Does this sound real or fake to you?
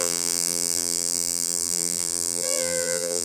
fake